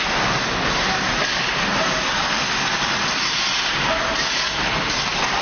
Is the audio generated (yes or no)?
no